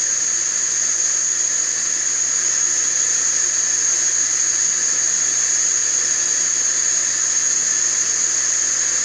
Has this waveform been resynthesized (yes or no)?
no